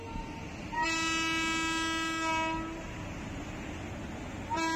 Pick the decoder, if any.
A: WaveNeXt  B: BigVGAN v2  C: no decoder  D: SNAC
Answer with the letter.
C